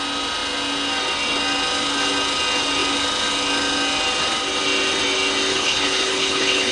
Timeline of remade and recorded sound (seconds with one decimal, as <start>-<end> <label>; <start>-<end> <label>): 0.0-5.5 recorded; 5.5-6.7 remade